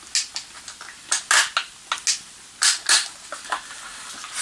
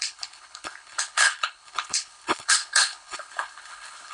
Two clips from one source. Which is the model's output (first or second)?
second